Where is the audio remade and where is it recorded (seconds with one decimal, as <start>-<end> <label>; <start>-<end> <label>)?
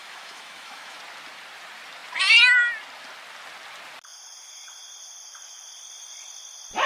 0.0-1.0 remade; 1.0-6.9 recorded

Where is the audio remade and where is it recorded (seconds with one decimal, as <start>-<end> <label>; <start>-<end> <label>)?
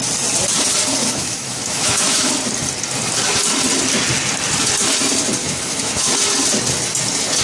0.0-1.0 recorded; 1.0-2.3 remade; 2.3-5.4 recorded; 5.4-6.1 remade; 6.1-7.4 recorded